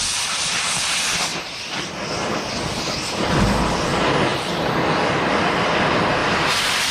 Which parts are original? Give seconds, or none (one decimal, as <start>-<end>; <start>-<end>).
0.0-6.2